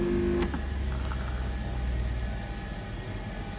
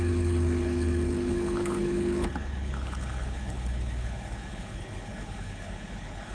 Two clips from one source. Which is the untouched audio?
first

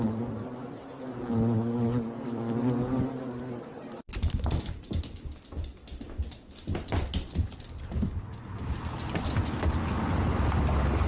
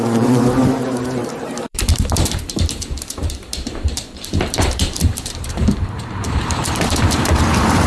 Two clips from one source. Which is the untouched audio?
first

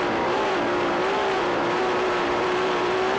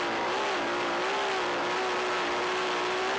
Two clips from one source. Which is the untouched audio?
second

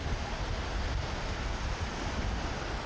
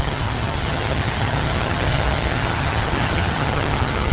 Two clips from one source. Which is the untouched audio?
first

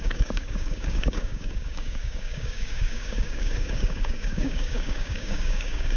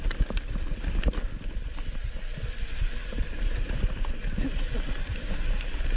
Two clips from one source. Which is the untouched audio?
second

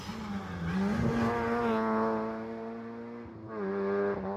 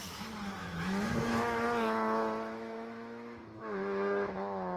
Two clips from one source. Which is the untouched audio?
first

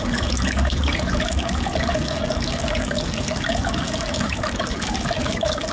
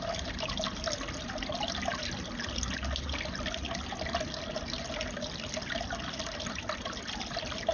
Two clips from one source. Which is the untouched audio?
second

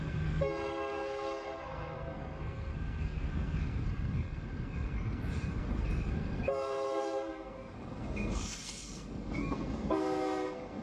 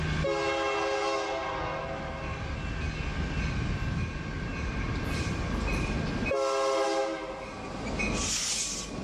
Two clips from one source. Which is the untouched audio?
second